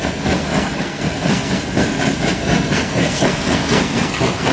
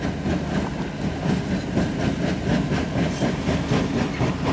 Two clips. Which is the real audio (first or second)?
second